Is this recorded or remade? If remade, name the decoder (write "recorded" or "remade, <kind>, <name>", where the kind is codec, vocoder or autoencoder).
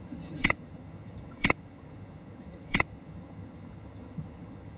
remade, vocoder, HiFi-GAN